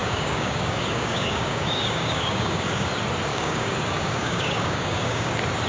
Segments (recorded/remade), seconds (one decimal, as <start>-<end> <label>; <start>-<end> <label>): 0.0-2.9 remade; 2.9-3.3 recorded; 3.3-5.3 remade; 5.3-5.7 recorded